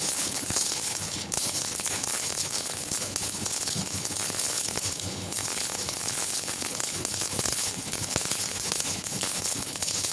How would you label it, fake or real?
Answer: fake